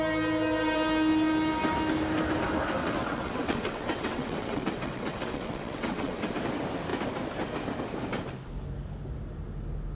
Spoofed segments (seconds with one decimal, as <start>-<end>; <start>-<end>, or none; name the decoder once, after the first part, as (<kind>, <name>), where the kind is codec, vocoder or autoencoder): 2.8-6.3 (vocoder, WaveNeXt)